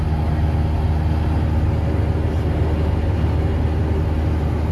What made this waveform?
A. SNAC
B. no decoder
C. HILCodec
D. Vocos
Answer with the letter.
B